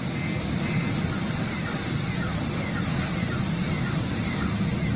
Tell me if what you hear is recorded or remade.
recorded